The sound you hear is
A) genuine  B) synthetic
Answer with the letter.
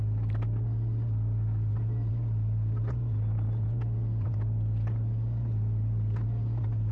A